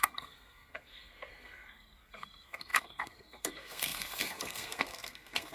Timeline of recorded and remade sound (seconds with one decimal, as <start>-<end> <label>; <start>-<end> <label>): 0.0-5.5 remade